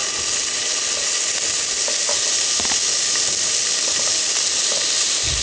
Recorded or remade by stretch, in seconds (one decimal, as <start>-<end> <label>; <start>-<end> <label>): 0.0-5.4 recorded